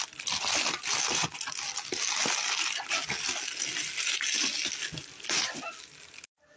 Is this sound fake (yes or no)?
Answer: no